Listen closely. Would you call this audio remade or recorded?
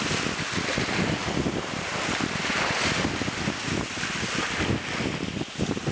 recorded